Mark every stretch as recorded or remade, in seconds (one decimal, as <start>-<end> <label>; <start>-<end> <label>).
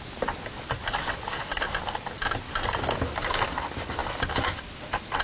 0.0-5.2 recorded